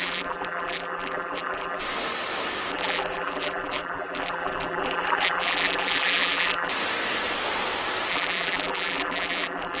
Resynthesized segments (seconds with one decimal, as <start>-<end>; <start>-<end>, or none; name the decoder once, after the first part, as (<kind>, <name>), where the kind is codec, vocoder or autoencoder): 0.0-1.8 (vocoder, BigVGAN v2); 2.7-6.7; 8.1-9.8